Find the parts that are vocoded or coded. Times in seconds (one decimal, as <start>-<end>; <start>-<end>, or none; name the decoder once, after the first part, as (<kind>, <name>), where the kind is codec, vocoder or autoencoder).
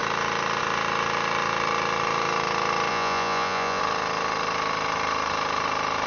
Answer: 2.9-3.8 (vocoder, Vocos)